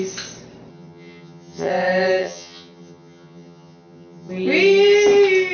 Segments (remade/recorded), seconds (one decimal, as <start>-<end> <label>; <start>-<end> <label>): 0.0-0.7 recorded; 0.7-1.7 remade; 1.7-2.2 recorded; 2.2-4.3 remade; 4.3-5.5 recorded